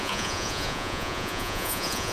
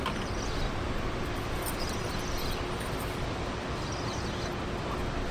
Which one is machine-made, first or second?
first